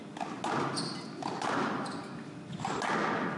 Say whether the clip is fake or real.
real